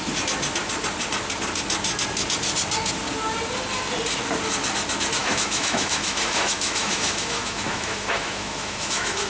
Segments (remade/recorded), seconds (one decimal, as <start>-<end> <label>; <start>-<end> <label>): 0.0-5.2 recorded; 5.2-9.3 remade